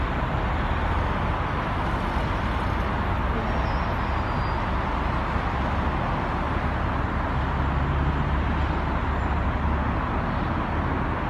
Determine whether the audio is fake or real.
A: real